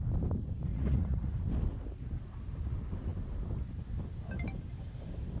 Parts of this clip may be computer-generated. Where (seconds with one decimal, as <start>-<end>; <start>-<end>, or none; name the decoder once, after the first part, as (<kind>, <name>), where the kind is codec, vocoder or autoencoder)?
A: 0.7-1.4 (vocoder, Vocos)